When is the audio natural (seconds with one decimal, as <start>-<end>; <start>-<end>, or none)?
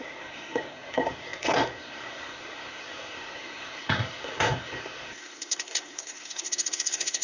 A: none